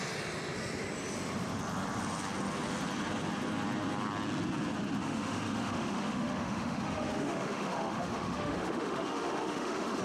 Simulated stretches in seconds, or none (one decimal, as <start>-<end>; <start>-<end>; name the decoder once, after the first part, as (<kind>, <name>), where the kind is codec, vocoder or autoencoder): 5.0-10.0 (autoencoder, DAC-VAE)